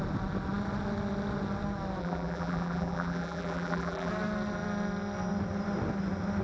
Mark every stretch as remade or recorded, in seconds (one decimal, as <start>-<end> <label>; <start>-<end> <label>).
0.0-2.0 recorded; 2.0-4.1 remade; 4.1-6.4 recorded